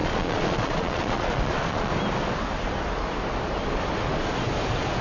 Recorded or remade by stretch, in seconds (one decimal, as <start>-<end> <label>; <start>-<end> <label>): 0.0-1.9 remade; 1.9-5.0 recorded